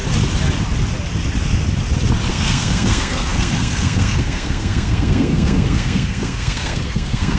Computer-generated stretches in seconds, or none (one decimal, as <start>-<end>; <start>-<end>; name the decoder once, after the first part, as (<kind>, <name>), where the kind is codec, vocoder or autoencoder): 2.3-7.4 (codec, SNAC)